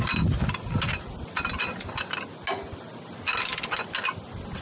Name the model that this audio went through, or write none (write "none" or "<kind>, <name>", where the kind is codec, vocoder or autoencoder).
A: none